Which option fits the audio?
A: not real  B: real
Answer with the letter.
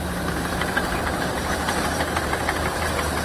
A